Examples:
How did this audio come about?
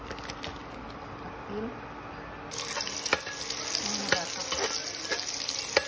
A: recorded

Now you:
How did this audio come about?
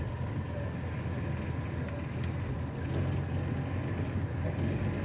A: recorded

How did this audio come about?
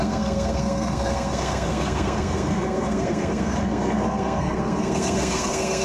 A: remade